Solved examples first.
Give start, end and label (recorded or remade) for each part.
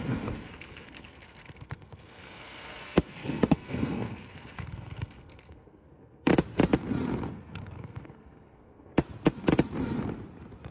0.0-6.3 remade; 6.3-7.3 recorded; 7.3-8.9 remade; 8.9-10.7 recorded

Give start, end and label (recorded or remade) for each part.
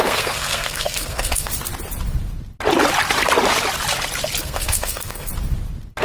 0.0-1.5 remade; 1.5-4.4 recorded; 4.4-5.3 remade; 5.3-6.0 recorded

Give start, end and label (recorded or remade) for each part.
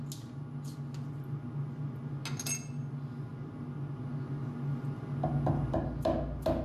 0.0-6.6 recorded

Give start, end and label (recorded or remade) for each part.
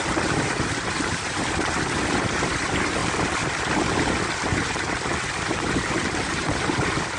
0.0-7.2 recorded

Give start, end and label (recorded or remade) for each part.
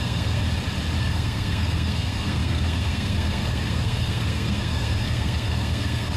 0.0-0.4 remade; 0.4-1.0 recorded; 1.0-6.2 remade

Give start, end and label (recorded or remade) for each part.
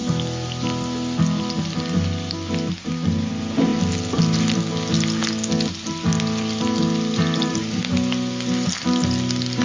0.0-9.6 recorded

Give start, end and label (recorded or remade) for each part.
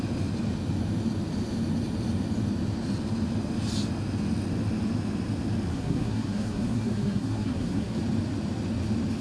0.0-5.7 recorded; 5.7-8.0 remade; 8.0-9.2 recorded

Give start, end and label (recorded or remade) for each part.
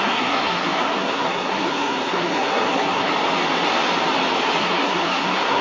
0.0-3.1 remade; 3.1-4.6 recorded; 4.6-5.6 remade